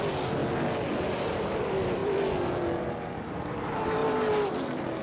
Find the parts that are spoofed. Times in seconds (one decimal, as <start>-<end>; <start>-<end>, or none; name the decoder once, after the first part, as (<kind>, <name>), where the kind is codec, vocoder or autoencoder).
0.0-0.4 (vocoder, BigVGAN v2); 0.9-2.0; 2.8-4.0